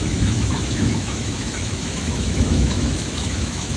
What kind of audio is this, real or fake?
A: fake